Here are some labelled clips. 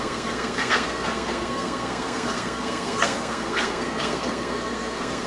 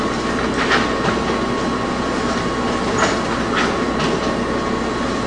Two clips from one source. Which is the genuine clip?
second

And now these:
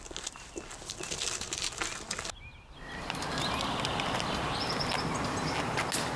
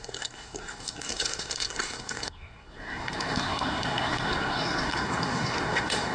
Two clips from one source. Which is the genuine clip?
first